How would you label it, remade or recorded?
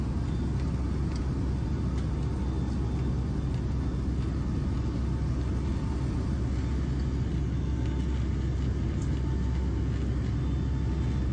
recorded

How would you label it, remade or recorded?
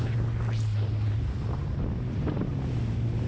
recorded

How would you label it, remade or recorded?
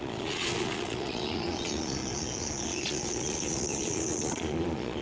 remade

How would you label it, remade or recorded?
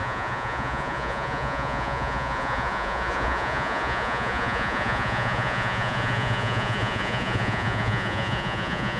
remade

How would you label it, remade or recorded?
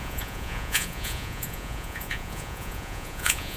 remade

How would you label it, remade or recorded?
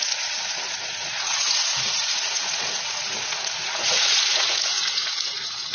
remade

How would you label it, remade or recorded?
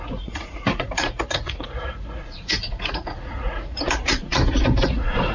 remade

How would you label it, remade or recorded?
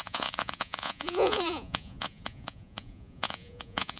remade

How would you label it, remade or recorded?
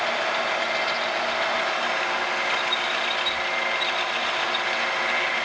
recorded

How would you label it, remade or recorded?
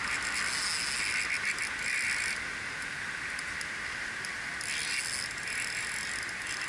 recorded